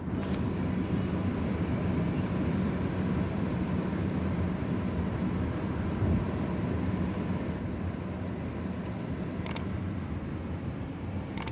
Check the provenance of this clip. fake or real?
fake